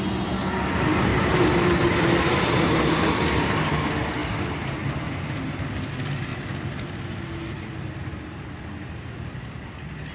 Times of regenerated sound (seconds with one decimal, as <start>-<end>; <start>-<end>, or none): none